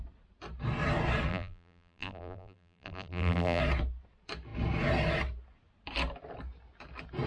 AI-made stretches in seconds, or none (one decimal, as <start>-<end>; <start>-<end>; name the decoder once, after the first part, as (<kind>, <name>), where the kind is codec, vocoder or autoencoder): 1.3-3.6 (vocoder, BigVGAN v2)